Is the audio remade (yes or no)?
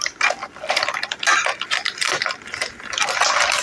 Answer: no